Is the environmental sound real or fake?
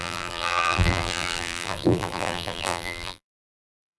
fake